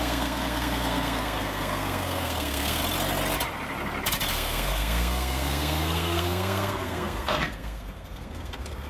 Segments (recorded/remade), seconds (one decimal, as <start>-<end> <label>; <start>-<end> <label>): 0.0-2.8 remade; 2.8-4.3 recorded; 4.3-8.9 remade